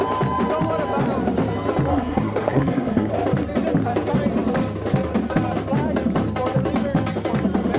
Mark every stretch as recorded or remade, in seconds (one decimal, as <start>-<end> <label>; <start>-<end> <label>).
0.0-1.9 recorded; 1.9-3.1 remade; 3.1-7.8 recorded